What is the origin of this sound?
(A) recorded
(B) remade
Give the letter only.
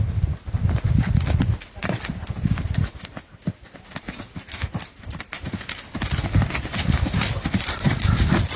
A